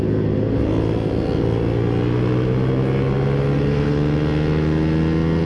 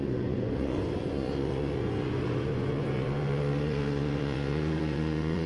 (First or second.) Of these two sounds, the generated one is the second